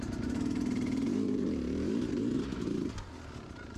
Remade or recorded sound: remade